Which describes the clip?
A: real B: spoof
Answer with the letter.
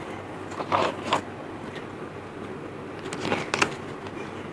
A